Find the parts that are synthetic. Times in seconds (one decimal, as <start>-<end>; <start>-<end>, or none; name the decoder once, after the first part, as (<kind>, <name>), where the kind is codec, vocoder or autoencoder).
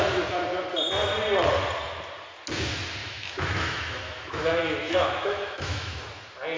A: 3.0-6.0 (autoencoder, DAC-VAE)